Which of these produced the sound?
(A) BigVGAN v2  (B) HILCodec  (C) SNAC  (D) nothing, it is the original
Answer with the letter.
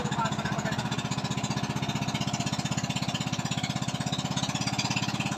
D